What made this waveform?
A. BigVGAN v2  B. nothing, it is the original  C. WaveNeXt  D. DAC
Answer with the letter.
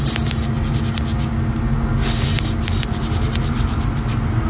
B